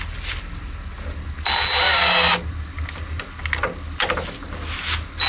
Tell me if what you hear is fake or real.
real